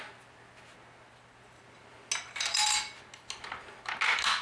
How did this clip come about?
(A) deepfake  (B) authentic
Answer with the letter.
B